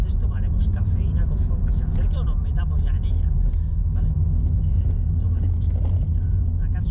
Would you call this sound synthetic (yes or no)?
no